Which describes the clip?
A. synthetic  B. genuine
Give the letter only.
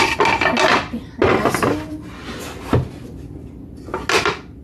B